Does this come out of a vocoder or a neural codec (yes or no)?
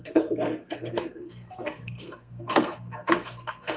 yes